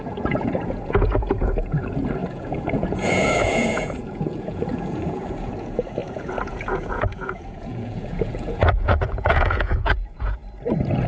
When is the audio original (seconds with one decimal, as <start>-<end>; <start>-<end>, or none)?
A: 10.4-11.1